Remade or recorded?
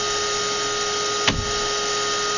recorded